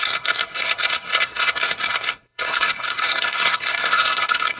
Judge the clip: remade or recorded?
remade